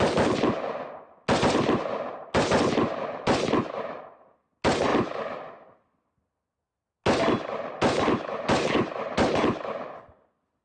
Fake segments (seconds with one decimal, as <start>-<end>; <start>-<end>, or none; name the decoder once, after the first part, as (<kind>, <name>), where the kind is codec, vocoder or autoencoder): none